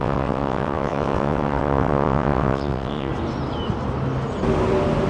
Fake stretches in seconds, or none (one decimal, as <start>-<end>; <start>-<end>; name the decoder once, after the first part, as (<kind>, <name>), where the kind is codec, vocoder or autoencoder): 0.0-3.1 (vocoder, WaveNeXt)